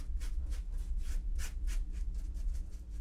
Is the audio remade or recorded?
recorded